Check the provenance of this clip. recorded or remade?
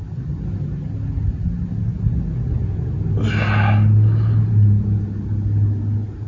recorded